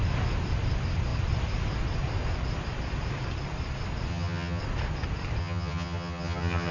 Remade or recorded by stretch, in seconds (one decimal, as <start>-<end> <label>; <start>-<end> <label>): 0.0-4.1 recorded; 4.1-4.6 remade; 4.6-5.4 recorded; 5.4-6.7 remade